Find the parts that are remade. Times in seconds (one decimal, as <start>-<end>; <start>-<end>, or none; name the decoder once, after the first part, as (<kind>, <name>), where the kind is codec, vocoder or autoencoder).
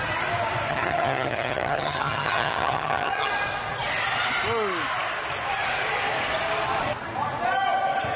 0.7-3.3 (vocoder, HiFi-GAN)